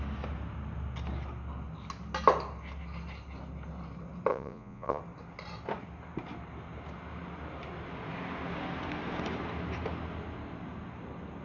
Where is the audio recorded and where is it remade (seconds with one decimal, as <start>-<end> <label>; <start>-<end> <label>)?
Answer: 0.0-4.3 recorded; 4.3-5.0 remade; 5.0-11.4 recorded